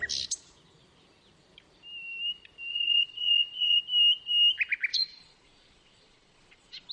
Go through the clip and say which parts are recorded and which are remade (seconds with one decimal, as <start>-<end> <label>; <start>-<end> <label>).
0.0-2.7 recorded; 2.7-3.8 remade; 3.8-4.9 recorded; 4.9-6.9 remade